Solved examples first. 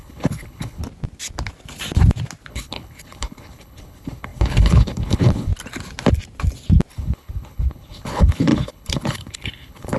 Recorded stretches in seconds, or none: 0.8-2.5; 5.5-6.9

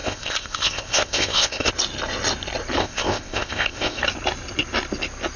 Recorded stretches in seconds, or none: 1.7-2.8; 4.0-5.4

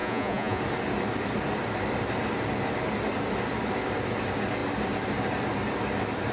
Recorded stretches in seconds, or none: 0.6-6.3